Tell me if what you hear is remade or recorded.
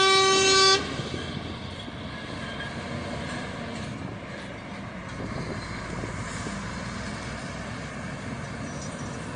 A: recorded